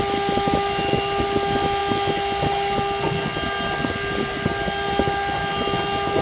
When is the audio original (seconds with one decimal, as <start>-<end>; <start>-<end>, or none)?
0.0-6.2